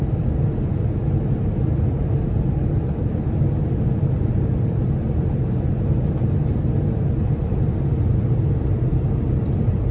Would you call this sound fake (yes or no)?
no